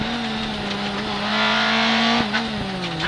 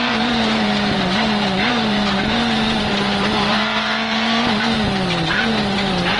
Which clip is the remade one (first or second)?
second